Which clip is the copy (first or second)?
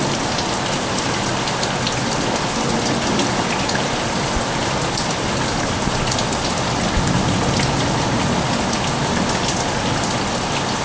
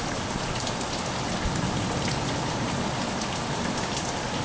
second